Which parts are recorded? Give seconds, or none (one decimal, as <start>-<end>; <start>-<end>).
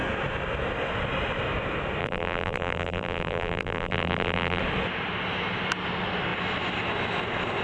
0.0-2.0; 4.6-7.6